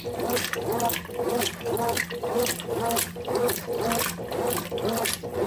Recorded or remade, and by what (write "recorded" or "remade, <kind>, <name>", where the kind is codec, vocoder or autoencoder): recorded